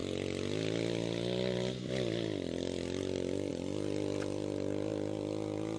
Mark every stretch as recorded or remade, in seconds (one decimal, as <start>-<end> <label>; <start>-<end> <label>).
0.0-5.8 recorded